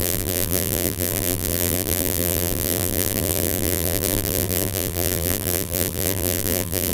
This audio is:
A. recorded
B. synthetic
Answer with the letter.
B